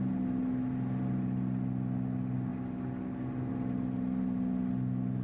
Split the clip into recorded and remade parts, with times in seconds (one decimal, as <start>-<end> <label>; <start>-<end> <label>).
0.0-5.2 recorded